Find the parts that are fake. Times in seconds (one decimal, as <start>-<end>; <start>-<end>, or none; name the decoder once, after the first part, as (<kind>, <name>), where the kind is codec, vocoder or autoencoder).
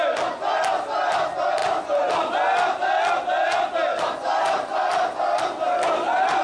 none